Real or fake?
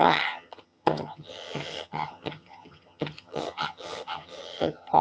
fake